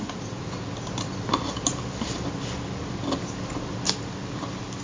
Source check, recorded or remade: recorded